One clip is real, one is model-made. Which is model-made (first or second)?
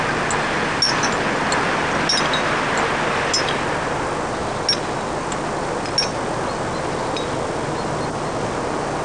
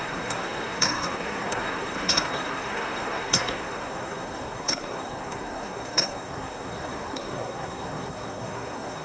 second